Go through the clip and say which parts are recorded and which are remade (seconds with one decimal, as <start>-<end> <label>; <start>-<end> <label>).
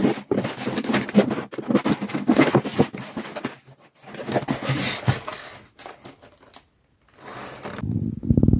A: 0.0-2.1 remade; 2.1-8.6 recorded